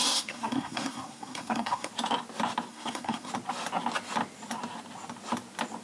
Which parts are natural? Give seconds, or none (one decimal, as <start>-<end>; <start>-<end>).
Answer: 1.9-2.7; 3.3-5.8